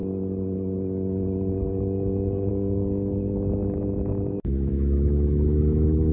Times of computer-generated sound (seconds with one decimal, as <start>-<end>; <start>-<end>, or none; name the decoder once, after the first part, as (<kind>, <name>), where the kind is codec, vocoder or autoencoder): 2.5-6.1 (autoencoder, DAC-VAE)